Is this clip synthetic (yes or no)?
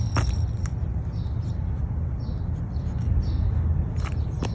no